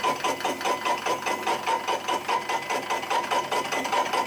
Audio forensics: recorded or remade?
recorded